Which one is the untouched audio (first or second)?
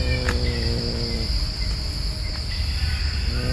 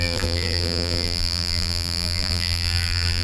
first